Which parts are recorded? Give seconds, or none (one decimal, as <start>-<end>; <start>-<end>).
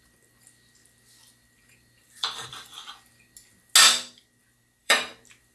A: 0.0-2.0; 2.5-4.4; 5.1-5.5